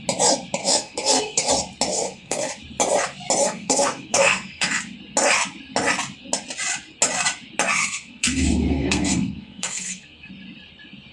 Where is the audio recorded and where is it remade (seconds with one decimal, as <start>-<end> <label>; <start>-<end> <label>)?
0.0-0.6 recorded; 0.6-1.5 remade; 1.5-1.9 recorded; 1.9-2.5 remade; 2.5-3.4 recorded; 3.4-4.8 remade; 4.8-7.8 recorded; 7.8-10.3 remade; 10.3-11.1 recorded